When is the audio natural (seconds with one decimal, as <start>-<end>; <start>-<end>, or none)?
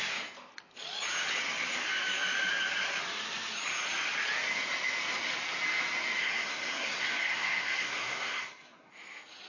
0.0-6.2; 8.9-9.5